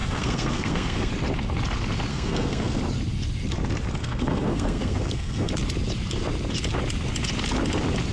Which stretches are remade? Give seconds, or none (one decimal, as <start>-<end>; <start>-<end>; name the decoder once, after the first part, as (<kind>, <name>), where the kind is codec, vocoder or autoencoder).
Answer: 0.0-1.1 (codec, SNAC); 2.1-2.8; 4.0-5.5